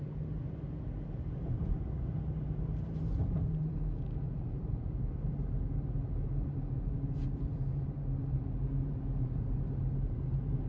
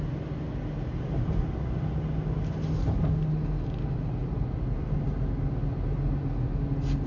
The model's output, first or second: first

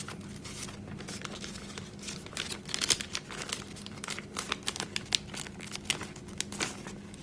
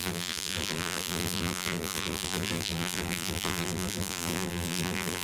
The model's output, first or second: second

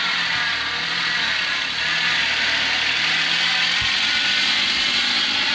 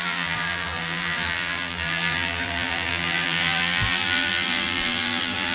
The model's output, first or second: second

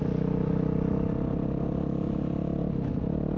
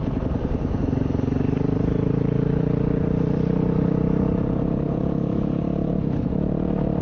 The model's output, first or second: second